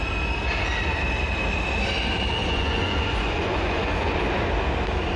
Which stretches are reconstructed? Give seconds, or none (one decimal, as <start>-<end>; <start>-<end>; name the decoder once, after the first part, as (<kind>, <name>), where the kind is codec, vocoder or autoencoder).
2.4-4.2 (vocoder, Vocos)